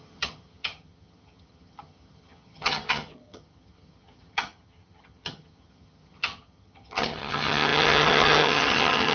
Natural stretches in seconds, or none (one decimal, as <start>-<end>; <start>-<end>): none